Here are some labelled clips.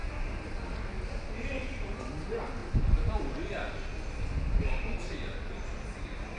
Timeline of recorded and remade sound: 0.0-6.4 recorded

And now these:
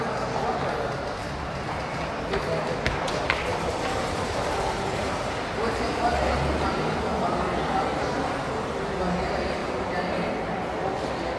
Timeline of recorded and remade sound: 0.0-3.5 recorded; 3.5-6.6 remade; 6.6-9.6 recorded; 9.6-10.3 remade; 10.3-11.4 recorded